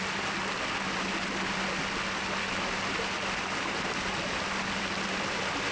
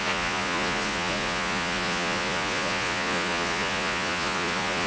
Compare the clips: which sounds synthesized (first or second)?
second